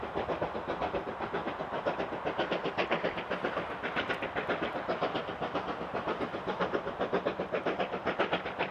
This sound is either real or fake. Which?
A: real